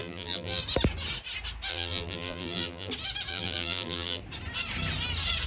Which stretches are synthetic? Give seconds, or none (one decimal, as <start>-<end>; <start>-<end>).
0.0-0.6; 1.7-2.9; 3.3-4.2